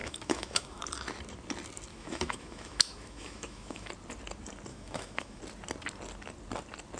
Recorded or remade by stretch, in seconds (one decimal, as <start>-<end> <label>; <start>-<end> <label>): 0.0-0.8 remade; 0.8-1.9 recorded; 1.9-3.9 remade; 3.9-4.7 recorded; 4.7-5.4 remade; 5.4-7.0 recorded